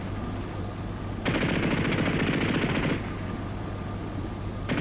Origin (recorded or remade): recorded